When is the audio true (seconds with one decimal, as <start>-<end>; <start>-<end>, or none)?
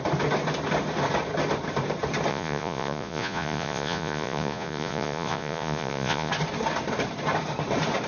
0.0-2.3; 6.3-8.1